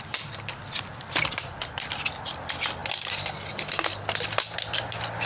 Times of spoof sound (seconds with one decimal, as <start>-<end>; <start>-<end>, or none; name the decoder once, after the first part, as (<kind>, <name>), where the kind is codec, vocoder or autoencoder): none